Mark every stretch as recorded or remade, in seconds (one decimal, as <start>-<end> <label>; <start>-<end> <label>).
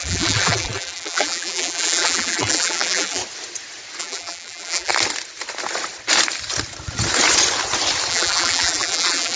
0.0-3.2 remade; 3.2-4.0 recorded; 4.0-4.9 remade; 4.9-8.1 recorded; 8.1-9.4 remade